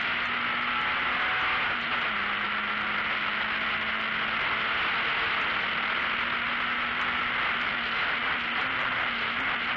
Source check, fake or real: real